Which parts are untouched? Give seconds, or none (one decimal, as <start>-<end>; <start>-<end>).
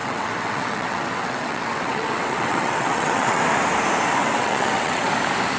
3.4-4.2; 5.1-5.6